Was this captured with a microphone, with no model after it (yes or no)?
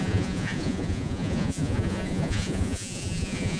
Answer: no